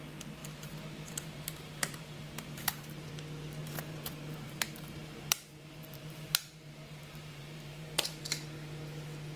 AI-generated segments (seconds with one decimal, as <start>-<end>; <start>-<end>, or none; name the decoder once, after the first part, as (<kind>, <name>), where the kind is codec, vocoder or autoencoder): 0.4-3.1 (vocoder, BigVGAN v2); 3.6-8.2